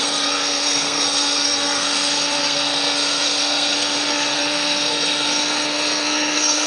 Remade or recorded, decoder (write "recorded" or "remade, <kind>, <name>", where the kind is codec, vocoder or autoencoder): remade, codec, SNAC